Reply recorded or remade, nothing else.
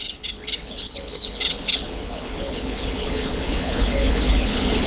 remade